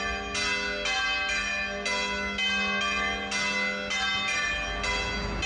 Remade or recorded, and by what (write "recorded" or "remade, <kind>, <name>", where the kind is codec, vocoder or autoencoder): recorded